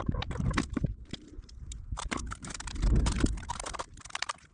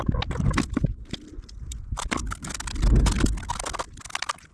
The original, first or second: second